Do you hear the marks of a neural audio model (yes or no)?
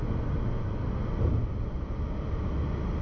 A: no